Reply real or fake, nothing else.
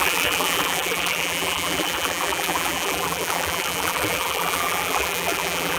fake